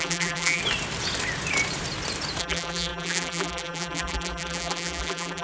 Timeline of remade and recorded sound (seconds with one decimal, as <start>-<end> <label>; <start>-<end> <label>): 0.0-0.6 remade; 0.6-2.4 recorded; 2.4-5.4 remade

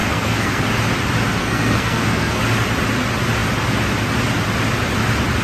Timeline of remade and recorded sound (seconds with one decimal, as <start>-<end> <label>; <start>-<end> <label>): 0.0-0.6 remade; 0.6-1.4 recorded; 1.4-2.4 remade; 2.4-5.4 recorded

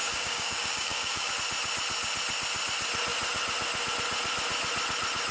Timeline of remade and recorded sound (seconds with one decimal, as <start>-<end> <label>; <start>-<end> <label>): 0.0-1.3 remade; 1.3-5.3 recorded